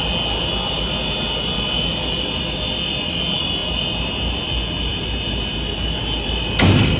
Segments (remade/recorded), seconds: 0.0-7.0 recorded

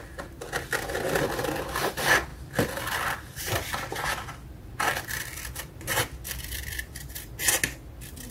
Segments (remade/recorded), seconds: 0.0-2.3 recorded; 2.3-7.1 remade; 7.1-8.3 recorded

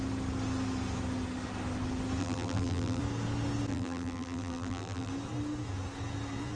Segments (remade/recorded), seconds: 0.0-2.2 recorded; 2.2-3.0 remade; 3.0-3.7 recorded; 3.7-5.1 remade; 5.1-6.6 recorded

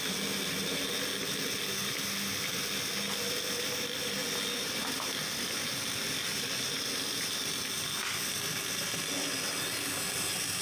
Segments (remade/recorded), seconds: 0.0-10.6 recorded

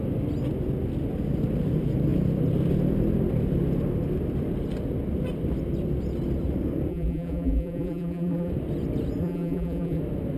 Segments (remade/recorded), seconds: 0.0-6.9 recorded; 6.9-8.5 remade; 8.5-9.2 recorded; 9.2-10.0 remade; 10.0-10.4 recorded

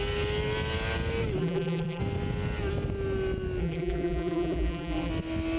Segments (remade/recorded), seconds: 0.0-1.4 recorded; 1.4-2.0 remade; 2.0-3.6 recorded; 3.6-5.1 remade; 5.1-5.6 recorded

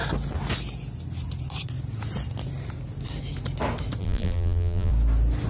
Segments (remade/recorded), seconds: 0.0-4.0 recorded; 4.0-4.9 remade; 4.9-5.5 recorded